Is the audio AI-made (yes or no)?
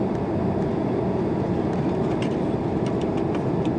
no